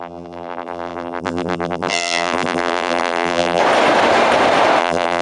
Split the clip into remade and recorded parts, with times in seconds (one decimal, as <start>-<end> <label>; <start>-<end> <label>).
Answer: 0.0-3.6 remade; 3.6-4.8 recorded; 4.8-5.2 remade